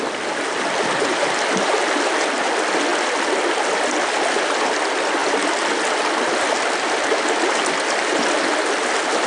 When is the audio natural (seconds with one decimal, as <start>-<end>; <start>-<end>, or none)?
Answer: 0.0-9.3